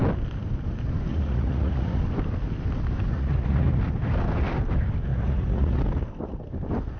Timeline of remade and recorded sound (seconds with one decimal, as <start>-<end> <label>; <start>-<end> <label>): 0.0-1.1 recorded; 1.1-2.0 remade; 2.0-3.1 recorded; 3.1-3.8 remade; 3.8-5.1 recorded; 5.1-5.8 remade; 5.8-7.0 recorded